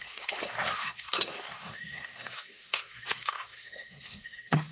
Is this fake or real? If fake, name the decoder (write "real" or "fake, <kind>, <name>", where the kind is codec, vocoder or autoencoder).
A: fake, codec, SNAC